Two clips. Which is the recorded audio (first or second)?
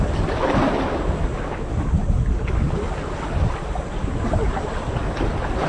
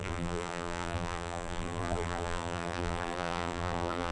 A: first